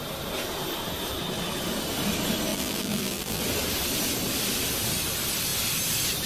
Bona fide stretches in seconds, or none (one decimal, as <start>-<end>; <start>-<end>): 0.0-2.5; 3.4-6.3

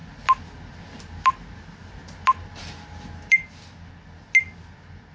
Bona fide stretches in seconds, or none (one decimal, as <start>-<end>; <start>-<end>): 0.0-5.1

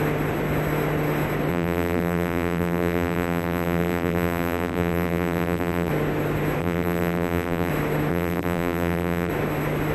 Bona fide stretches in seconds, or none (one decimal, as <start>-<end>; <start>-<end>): 0.0-1.5; 5.9-6.6; 7.7-8.1; 9.3-9.9

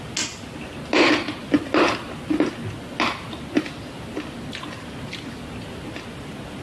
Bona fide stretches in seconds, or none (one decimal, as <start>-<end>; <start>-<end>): 0.0-6.6

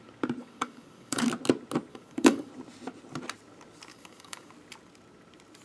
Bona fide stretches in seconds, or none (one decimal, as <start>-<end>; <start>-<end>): 0.0-0.4; 1.2-1.9; 2.5-3.9; 4.5-5.6

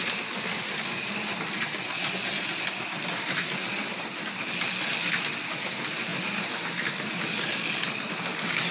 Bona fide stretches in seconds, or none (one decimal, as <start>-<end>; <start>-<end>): 0.0-8.7

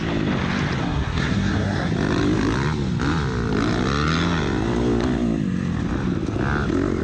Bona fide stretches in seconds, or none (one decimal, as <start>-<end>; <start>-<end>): 0.0-0.8; 1.9-7.0